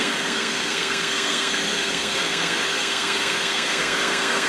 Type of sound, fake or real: fake